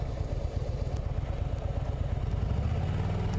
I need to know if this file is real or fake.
real